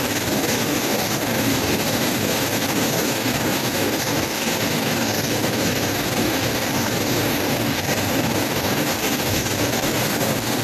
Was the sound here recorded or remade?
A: remade